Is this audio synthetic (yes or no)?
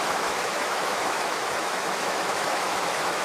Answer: yes